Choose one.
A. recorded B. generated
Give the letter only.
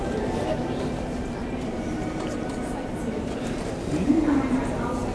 B